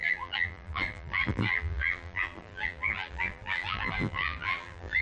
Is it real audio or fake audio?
fake